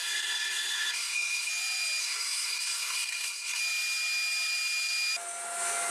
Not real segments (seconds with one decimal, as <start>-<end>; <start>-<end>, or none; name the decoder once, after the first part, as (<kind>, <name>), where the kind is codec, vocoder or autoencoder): 0.0-1.5 (codec, SNAC); 2.0-3.6